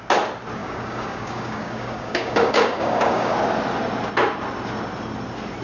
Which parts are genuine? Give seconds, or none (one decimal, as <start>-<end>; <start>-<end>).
0.0-0.6; 3.3-5.6